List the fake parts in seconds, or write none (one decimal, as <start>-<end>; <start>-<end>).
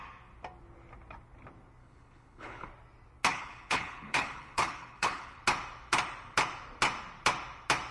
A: 1.8-2.7; 3.3-5.4